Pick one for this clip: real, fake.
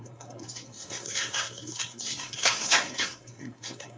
fake